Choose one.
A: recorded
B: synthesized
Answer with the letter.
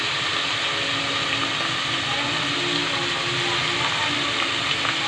A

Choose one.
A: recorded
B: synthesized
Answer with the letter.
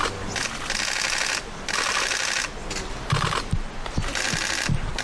A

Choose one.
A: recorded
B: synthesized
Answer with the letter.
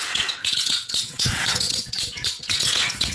B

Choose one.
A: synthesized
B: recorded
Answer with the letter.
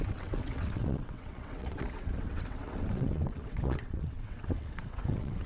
A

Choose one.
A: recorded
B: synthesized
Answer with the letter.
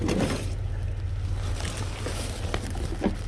A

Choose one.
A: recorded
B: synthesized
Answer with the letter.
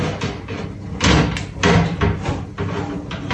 A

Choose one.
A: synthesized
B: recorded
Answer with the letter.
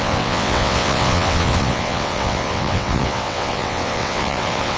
A